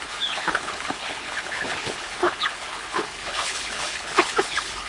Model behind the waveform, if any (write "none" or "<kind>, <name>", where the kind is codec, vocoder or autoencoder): codec, HILCodec